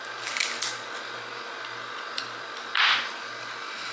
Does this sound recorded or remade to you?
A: recorded